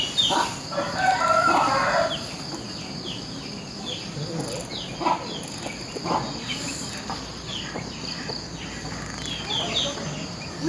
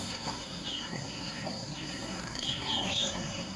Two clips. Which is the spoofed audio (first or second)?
second